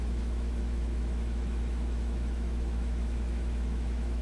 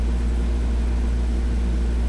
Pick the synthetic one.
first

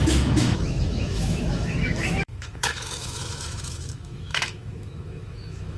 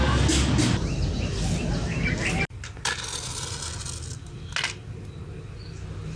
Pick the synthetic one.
first